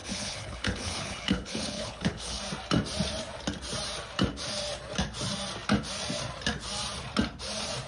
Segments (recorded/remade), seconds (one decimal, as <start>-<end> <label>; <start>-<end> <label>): 0.0-2.4 remade; 2.4-7.9 recorded